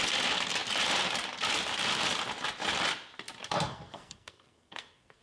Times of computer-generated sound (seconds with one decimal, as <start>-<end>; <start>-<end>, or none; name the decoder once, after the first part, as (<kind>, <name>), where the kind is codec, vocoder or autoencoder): 3.4-5.2 (codec, SNAC)